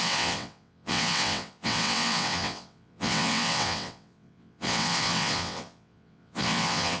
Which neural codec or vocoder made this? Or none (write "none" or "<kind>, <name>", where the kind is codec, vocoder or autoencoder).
vocoder, WaveNeXt